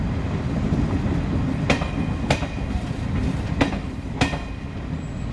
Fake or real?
fake